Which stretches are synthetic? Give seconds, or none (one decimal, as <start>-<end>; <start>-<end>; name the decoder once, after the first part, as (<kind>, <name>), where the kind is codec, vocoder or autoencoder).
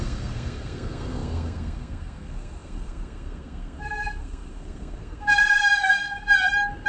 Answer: 0.0-6.3 (codec, SNAC)